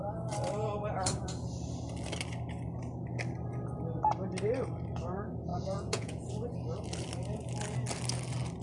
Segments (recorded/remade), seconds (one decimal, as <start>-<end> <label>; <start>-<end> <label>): 0.0-5.5 recorded; 5.5-6.3 remade; 6.3-8.6 recorded